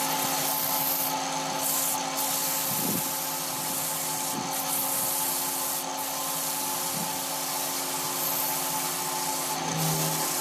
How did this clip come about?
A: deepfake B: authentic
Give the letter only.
B